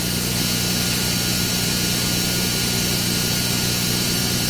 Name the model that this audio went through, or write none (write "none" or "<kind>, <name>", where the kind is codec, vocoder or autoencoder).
none